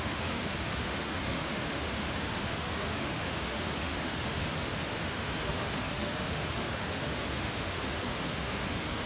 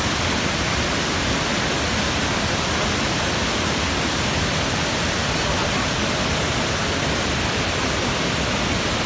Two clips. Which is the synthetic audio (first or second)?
first